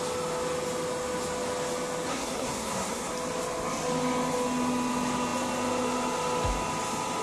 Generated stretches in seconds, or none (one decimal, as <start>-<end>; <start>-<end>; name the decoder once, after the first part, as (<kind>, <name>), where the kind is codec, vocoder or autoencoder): 2.1-3.1 (codec, SNAC)